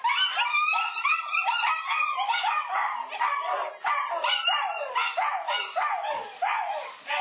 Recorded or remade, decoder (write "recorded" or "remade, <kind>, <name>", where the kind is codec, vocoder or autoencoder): recorded